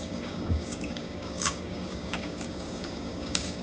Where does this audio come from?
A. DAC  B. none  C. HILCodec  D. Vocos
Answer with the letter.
A